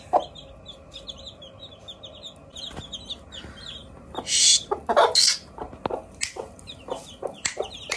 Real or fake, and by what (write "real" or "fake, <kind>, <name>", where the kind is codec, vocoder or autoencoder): real